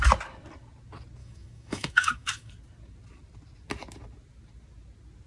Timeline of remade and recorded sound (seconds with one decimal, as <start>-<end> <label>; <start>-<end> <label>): 0.0-1.2 recorded; 1.2-2.5 remade; 2.5-5.3 recorded